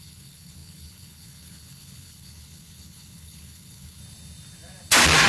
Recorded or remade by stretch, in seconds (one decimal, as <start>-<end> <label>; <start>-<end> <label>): 0.0-4.0 remade; 4.0-5.3 recorded